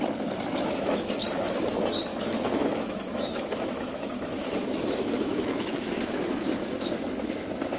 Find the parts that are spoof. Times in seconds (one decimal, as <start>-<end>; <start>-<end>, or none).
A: 0.5-1.0; 2.1-6.6